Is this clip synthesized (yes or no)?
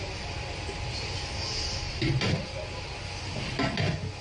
no